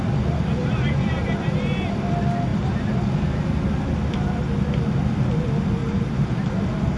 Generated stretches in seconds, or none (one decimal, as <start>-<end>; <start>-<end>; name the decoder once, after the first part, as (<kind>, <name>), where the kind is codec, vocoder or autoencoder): 0.6-1.7 (vocoder, BigVGAN v2); 2.5-3.0; 5.8-6.5